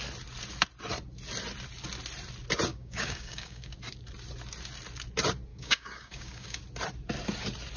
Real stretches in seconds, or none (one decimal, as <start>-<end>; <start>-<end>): 0.0-2.7; 3.7-5.5; 6.6-7.8

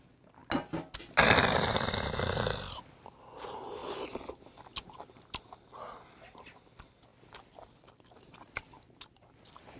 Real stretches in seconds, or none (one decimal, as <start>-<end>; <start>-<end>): 0.0-9.8

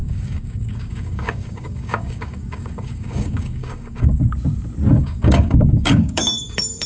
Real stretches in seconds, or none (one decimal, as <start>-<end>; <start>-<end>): 4.2-4.9

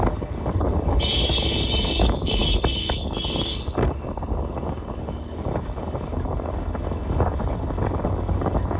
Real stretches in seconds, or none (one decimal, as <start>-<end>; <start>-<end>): none

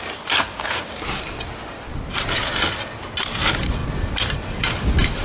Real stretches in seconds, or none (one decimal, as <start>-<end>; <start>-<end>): 0.0-0.5; 1.2-5.2

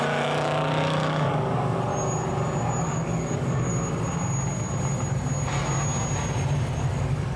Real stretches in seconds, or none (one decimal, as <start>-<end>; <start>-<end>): 1.9-2.8; 3.7-6.8